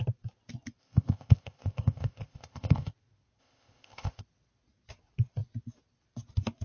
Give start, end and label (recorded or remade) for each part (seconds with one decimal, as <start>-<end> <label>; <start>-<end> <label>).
0.0-0.8 recorded; 0.8-2.9 remade; 2.9-3.4 recorded; 3.4-4.2 remade; 4.2-6.6 recorded